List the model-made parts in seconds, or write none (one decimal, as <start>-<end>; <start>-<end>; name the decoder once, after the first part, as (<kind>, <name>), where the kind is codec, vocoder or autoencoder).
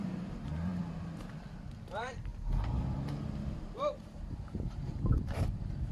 0.0-0.7 (vocoder, BigVGAN v2); 1.8-2.3; 3.6-5.9